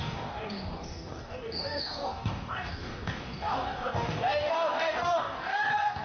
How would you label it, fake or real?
fake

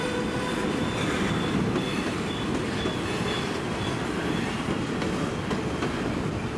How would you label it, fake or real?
real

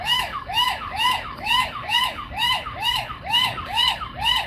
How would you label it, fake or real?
fake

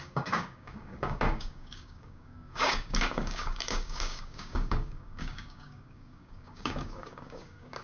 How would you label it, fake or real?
fake